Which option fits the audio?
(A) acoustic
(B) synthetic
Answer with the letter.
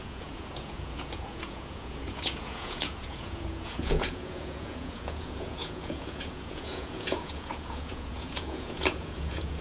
B